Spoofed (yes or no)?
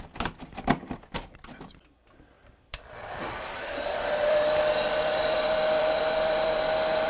yes